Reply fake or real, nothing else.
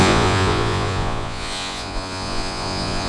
fake